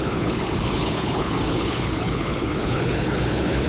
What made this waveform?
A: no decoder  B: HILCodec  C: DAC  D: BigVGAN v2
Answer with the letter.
B